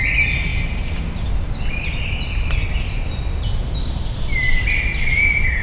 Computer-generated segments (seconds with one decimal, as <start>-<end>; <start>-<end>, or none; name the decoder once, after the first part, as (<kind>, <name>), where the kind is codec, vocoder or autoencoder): none